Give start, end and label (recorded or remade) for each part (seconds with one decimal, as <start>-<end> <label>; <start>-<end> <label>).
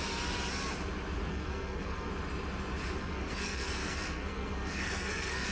0.0-1.3 recorded; 1.3-2.1 remade; 2.1-3.0 recorded; 3.0-5.5 remade